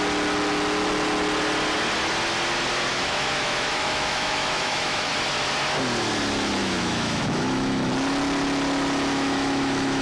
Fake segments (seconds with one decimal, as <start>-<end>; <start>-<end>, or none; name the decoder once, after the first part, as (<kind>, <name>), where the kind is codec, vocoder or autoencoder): 2.9-5.1 (autoencoder, DAC-VAE); 6.6-7.9; 9.1-10.0